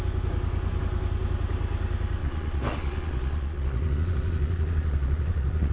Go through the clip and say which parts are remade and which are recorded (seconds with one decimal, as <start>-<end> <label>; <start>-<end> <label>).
0.0-2.2 recorded; 2.2-5.7 remade